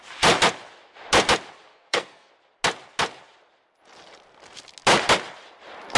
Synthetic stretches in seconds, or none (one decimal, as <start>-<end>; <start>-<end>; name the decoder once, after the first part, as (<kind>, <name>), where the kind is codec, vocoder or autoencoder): 1.7-2.3 (codec, SNAC)